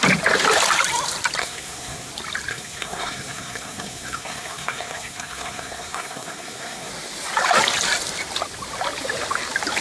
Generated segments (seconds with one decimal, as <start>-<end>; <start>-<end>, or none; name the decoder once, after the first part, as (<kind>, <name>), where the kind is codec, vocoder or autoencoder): 1.4-2.1 (codec, SNAC); 2.5-6.9